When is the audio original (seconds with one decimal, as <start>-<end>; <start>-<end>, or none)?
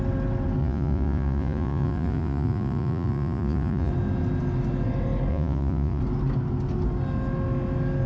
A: 0.0-0.6; 3.9-5.3; 6.0-8.1